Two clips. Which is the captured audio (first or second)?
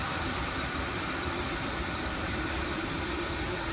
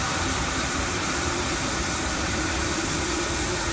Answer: second